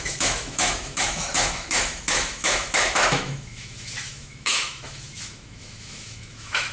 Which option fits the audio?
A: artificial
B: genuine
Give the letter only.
A